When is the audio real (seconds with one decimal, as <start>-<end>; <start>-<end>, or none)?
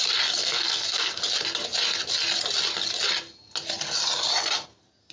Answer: 0.0-0.4; 1.2-5.1